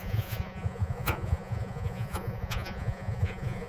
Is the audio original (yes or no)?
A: no